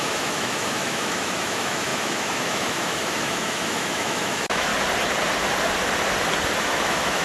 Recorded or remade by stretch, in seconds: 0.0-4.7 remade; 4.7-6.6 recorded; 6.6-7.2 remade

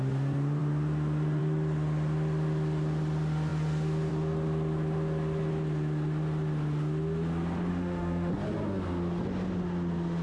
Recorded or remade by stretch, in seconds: 0.0-7.7 recorded; 7.7-8.3 remade; 8.3-10.2 recorded